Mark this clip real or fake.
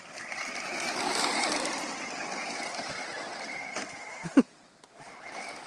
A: real